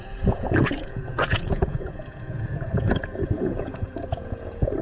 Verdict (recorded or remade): remade